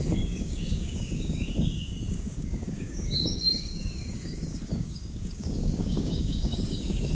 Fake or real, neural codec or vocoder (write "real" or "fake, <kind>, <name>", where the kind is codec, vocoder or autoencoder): fake, codec, DAC